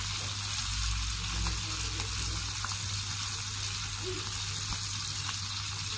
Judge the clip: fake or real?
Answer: real